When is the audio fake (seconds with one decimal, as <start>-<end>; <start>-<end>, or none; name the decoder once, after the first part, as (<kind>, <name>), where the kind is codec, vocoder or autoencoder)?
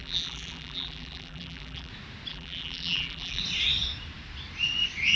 0.0-1.9 (vocoder, BigVGAN v2); 2.3-3.4